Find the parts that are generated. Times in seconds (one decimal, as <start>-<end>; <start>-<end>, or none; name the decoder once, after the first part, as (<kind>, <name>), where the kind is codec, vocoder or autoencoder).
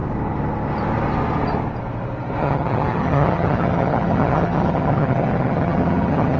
2.4-6.4 (vocoder, HiFi-GAN)